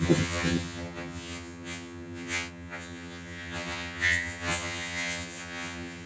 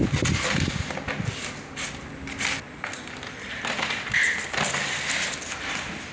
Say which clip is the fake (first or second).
first